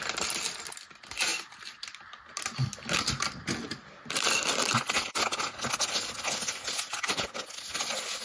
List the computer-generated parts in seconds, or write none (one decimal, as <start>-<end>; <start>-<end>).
none